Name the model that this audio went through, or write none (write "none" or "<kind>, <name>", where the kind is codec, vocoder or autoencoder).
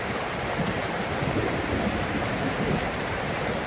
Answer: vocoder, BigVGAN v2